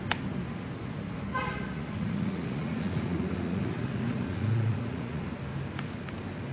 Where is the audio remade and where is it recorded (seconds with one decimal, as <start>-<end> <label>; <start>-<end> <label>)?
0.0-1.3 recorded; 1.3-5.2 remade; 5.2-6.5 recorded